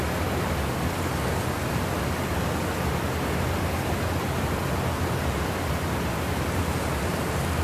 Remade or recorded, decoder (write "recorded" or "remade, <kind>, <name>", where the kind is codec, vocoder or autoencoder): recorded